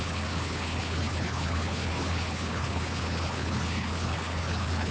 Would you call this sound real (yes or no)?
no